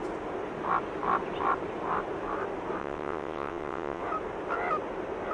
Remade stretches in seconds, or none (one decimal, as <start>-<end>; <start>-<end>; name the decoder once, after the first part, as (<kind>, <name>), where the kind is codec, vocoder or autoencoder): 2.8-4.0 (vocoder, WaveNeXt)